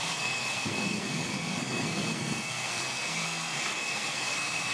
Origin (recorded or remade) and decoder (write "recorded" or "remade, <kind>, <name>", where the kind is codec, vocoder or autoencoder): remade, codec, SNAC